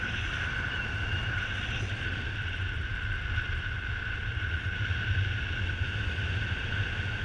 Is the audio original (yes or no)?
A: yes